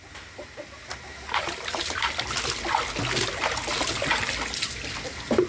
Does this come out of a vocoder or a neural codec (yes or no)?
no